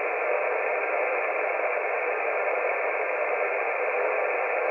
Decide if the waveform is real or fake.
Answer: real